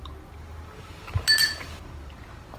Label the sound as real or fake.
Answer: real